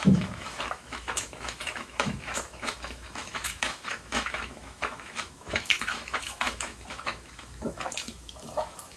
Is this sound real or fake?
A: fake